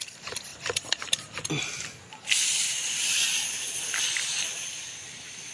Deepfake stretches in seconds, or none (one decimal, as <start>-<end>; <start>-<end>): none